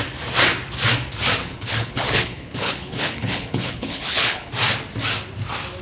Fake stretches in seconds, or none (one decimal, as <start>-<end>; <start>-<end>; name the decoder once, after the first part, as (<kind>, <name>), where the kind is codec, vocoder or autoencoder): 1.4-4.5 (codec, HILCodec)